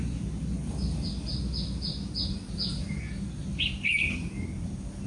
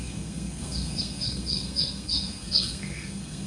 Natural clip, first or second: first